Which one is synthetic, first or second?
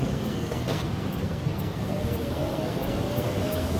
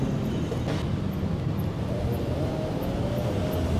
first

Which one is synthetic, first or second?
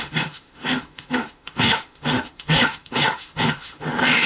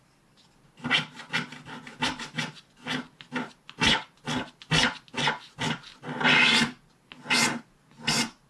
first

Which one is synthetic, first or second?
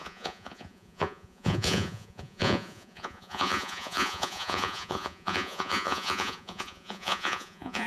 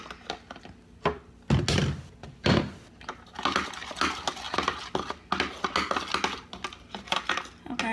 first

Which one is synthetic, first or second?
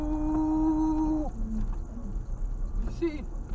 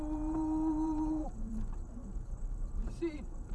second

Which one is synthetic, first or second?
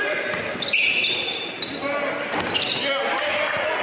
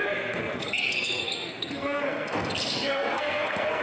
second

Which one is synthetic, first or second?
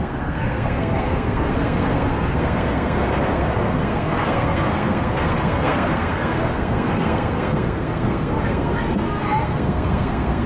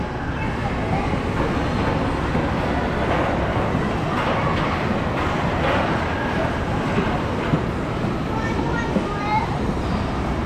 first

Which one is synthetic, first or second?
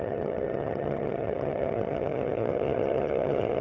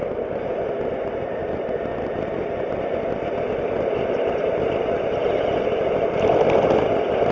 first